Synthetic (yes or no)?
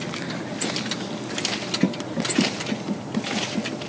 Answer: no